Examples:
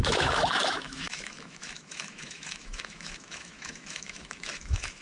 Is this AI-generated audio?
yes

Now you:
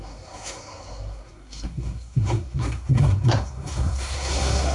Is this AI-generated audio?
yes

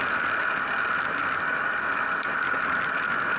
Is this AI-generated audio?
no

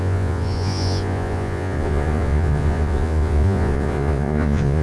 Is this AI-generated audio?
yes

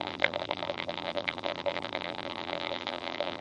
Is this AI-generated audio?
yes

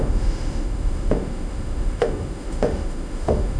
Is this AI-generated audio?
yes